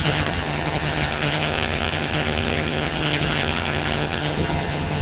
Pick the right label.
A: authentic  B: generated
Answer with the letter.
B